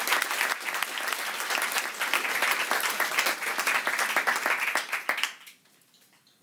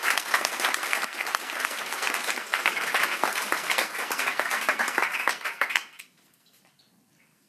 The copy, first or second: second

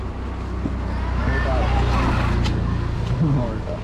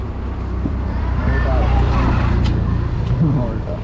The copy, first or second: second